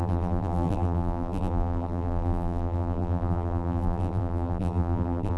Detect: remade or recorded remade